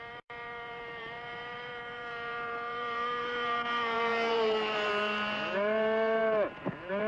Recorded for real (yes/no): no